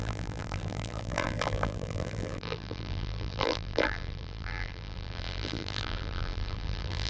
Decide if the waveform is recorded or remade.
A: remade